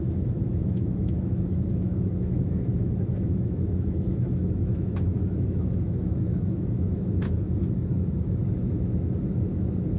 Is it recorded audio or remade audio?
remade